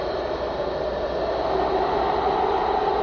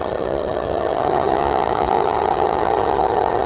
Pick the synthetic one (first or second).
second